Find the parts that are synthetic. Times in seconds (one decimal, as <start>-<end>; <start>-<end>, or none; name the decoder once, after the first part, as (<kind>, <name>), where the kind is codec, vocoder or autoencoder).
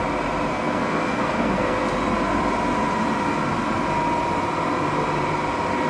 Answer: 0.5-1.8 (codec, SNAC)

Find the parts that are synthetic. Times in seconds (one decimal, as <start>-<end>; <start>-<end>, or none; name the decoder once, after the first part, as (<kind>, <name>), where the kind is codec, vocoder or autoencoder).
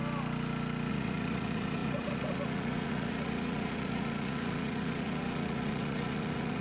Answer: 0.9-6.6 (vocoder, Vocos)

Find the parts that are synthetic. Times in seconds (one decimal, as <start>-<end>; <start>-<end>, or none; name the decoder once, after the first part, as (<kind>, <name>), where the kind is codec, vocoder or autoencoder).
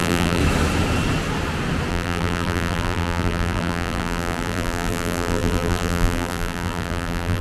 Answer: 0.0-0.4 (vocoder, BigVGAN v2); 1.9-7.4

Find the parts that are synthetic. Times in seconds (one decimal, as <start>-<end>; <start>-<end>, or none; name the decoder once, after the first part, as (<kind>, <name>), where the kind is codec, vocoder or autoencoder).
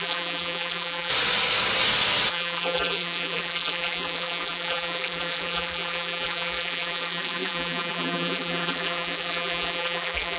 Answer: 0.0-1.1 (vocoder, BigVGAN v2); 2.3-10.4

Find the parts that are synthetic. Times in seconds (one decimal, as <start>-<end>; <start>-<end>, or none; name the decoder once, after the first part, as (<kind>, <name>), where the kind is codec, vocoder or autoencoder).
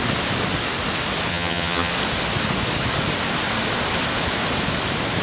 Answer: 1.3-1.9 (vocoder, HiFi-GAN)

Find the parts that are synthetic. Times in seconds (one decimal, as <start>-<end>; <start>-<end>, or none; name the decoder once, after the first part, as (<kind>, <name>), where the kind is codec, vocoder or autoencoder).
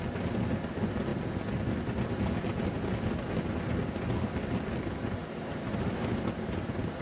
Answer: none